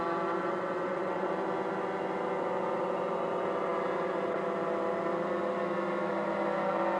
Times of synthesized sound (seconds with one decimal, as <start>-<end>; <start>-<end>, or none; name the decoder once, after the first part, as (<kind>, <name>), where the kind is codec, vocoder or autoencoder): 0.4-1.3 (vocoder, WaveNeXt)

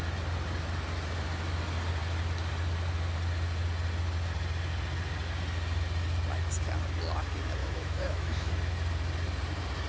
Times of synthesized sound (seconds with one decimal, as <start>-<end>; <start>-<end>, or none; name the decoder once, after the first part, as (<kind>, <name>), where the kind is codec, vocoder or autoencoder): 7.6-8.5 (autoencoder, DAC-VAE)

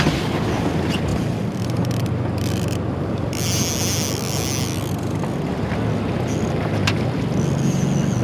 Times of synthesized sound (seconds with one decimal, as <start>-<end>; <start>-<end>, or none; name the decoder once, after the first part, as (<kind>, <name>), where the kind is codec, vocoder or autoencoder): none

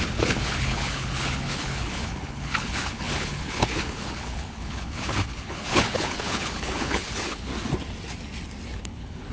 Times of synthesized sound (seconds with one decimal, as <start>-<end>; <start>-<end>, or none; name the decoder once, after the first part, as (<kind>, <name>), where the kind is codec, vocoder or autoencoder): 0.0-7.5 (codec, HILCodec); 8.8-9.3

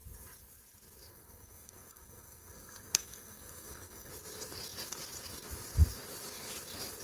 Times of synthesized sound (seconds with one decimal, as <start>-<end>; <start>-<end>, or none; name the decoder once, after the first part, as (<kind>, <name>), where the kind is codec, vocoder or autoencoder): 1.1-4.1 (codec, SNAC)